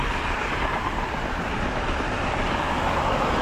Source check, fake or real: real